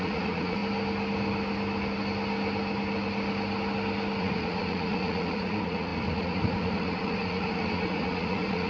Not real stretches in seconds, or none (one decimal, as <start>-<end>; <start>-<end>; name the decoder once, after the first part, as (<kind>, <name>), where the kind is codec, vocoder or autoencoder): 0.0-0.6 (vocoder, Vocos); 4.2-8.7